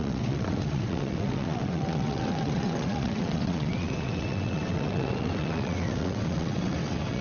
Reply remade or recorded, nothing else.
remade